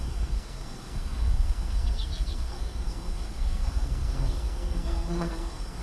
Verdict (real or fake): fake